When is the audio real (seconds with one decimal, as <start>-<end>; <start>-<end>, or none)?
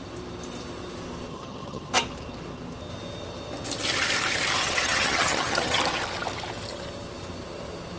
0.0-1.3; 1.9-4.6; 5.8-8.0